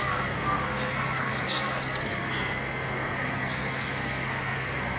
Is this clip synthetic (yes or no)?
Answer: yes